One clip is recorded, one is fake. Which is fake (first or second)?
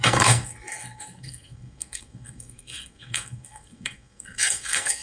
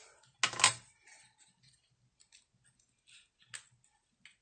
first